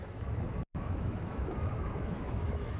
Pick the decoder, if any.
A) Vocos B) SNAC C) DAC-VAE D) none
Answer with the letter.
C